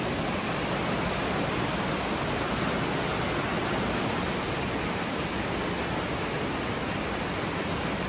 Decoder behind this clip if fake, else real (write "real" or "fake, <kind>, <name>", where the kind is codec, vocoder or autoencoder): real